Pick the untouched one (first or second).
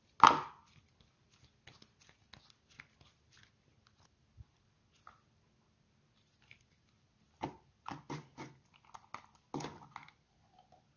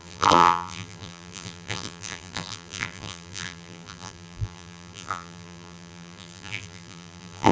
first